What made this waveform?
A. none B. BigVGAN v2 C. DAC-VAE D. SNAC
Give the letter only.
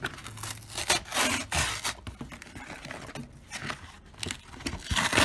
A